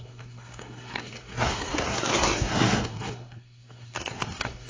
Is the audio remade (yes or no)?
yes